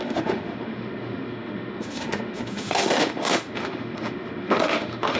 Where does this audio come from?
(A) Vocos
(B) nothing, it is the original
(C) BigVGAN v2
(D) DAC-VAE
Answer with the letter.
D